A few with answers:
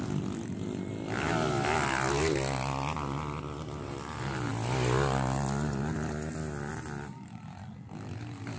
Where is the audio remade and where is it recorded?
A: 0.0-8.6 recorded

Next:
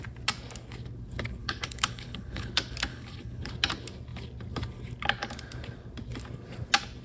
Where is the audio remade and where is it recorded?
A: 0.0-1.4 recorded; 1.4-2.5 remade; 2.5-2.9 recorded; 2.9-3.5 remade; 3.5-7.0 recorded

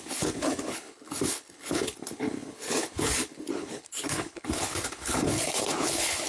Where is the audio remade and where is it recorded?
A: 0.0-6.3 remade